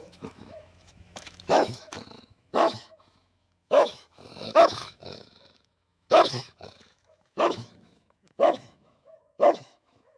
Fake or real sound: fake